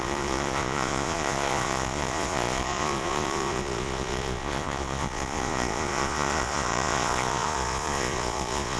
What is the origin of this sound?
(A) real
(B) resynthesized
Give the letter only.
B